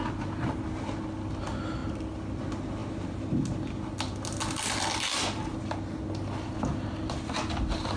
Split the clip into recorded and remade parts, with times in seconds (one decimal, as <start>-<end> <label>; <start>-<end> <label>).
0.0-8.0 recorded